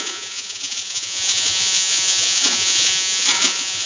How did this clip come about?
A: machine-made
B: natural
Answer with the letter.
A